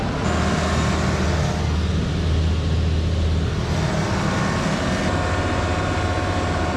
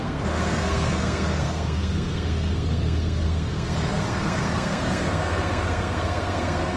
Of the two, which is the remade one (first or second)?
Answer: second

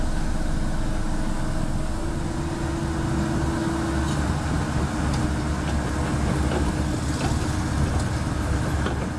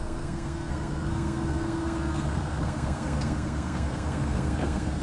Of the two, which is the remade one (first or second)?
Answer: second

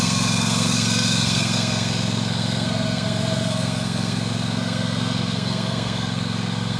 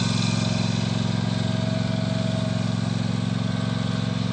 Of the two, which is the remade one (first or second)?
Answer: first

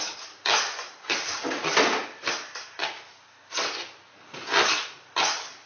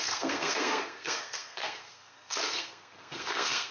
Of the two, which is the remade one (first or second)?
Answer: second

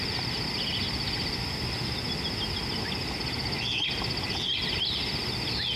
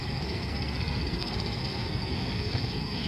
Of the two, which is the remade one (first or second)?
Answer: second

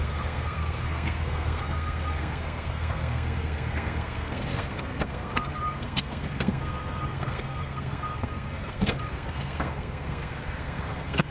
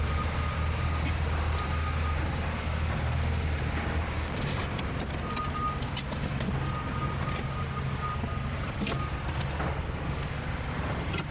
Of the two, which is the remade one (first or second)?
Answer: first